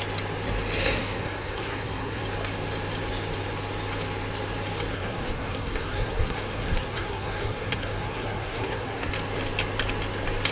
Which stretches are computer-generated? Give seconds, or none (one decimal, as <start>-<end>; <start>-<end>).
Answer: 0.8-2.2; 4.9-9.1